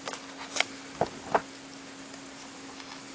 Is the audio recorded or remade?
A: recorded